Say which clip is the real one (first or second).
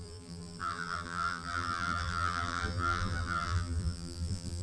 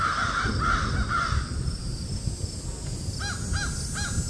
second